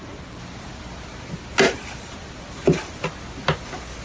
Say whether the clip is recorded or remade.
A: recorded